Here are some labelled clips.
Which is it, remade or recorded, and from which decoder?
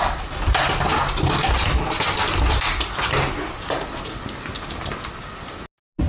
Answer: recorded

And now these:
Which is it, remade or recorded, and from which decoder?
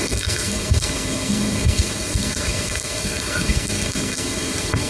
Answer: remade, codec, SNAC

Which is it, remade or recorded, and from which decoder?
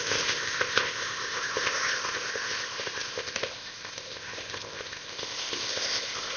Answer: remade, codec, ZipCodec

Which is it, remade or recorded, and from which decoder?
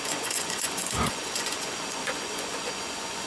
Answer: remade, vocoder, Vocos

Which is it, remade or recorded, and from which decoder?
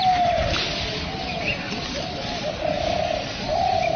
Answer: recorded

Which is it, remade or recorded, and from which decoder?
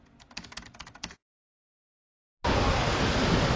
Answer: recorded